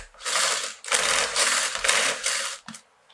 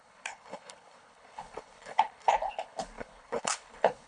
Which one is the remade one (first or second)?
second